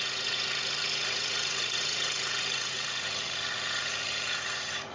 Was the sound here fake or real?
fake